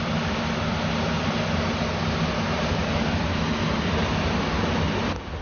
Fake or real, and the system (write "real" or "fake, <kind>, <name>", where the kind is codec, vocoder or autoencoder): real